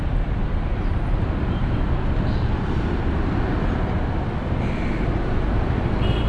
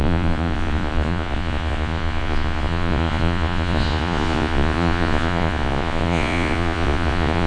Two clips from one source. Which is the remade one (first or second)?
second